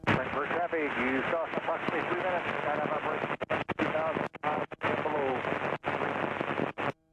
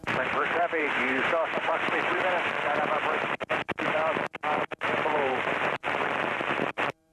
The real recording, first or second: first